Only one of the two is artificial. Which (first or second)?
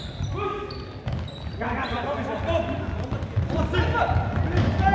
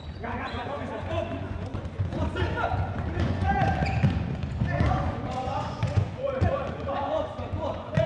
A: second